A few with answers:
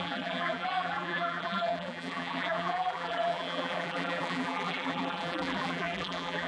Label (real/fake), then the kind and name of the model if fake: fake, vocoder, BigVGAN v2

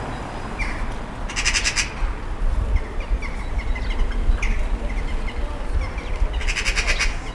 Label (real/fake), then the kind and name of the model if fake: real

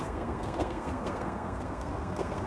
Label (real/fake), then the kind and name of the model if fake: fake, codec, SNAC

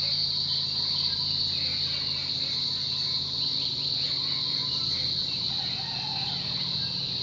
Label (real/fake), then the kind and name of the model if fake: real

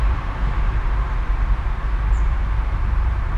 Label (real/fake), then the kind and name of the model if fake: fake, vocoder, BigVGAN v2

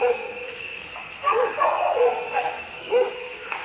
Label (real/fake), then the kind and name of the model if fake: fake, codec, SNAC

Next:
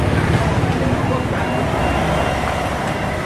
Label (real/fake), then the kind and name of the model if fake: real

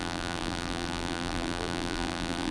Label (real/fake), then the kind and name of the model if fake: fake, vocoder, BigVGAN v2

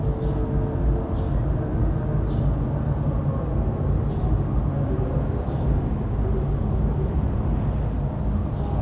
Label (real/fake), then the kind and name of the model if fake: real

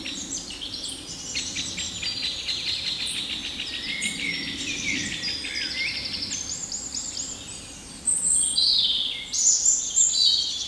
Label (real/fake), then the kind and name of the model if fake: real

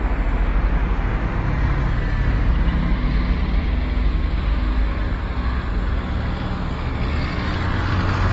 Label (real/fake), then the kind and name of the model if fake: real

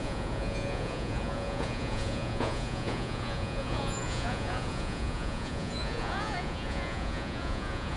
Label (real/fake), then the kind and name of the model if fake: fake, vocoder, Vocos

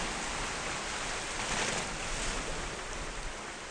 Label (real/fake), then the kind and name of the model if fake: real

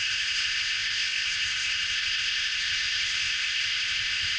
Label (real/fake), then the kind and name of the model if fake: fake, codec, ZipCodec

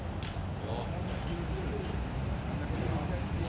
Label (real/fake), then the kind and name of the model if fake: real